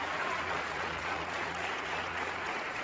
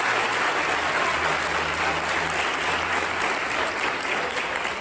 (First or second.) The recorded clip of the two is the second